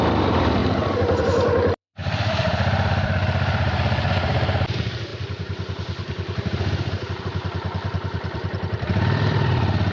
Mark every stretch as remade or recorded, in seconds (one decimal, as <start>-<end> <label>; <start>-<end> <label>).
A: 0.0-0.6 remade; 0.6-1.2 recorded; 1.2-9.9 remade